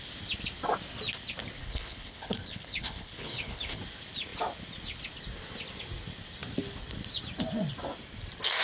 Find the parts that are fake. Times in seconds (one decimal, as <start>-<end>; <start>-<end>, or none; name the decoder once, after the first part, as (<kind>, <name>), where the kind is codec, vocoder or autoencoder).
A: 1.6-3.8 (codec, HILCodec)